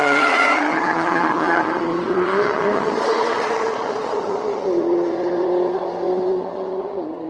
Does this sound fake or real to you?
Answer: fake